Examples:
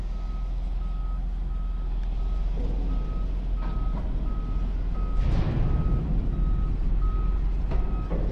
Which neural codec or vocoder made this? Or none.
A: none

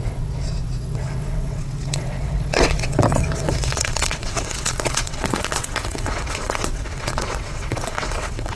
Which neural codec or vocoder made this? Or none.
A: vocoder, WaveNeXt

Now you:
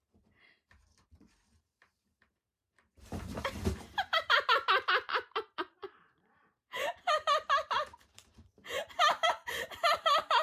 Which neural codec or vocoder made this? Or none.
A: vocoder, BigVGAN v2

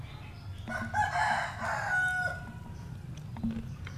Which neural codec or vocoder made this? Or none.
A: none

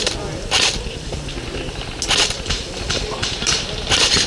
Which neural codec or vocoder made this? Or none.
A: none